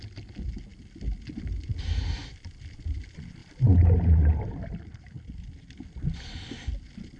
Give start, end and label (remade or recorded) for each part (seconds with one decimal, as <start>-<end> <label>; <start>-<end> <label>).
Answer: 0.0-7.2 recorded